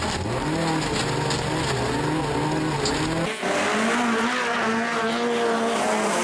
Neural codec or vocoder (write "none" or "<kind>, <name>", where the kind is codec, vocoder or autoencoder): none